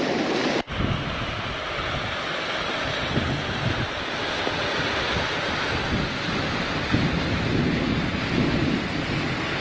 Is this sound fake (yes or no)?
no